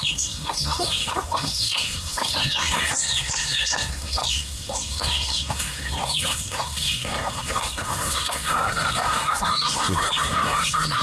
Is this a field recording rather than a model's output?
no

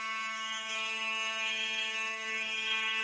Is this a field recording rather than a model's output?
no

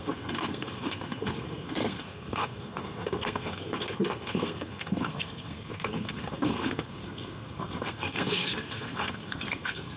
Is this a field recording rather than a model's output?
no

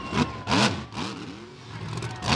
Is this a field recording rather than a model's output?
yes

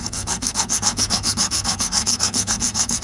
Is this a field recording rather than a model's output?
no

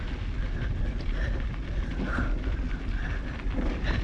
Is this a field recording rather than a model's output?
yes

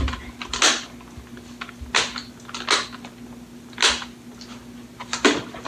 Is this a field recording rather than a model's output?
yes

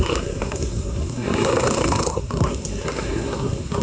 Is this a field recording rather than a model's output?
no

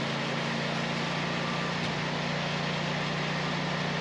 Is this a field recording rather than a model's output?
yes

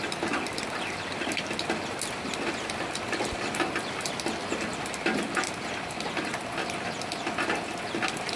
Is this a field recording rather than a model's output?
yes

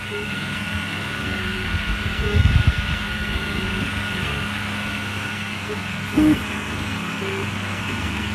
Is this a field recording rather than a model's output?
no